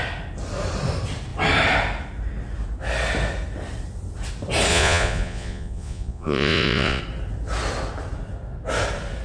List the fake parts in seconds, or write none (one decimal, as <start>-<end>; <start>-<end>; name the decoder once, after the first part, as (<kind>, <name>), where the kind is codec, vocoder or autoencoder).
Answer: 4.7-7.0 (vocoder, Vocos)